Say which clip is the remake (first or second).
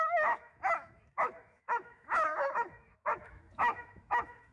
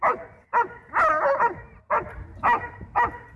first